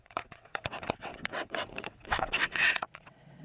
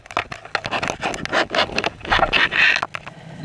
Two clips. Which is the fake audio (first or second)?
first